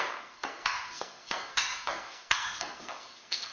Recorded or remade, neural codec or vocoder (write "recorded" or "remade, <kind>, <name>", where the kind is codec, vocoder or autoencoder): remade, codec, SNAC